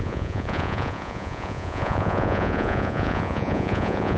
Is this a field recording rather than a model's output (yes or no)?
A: no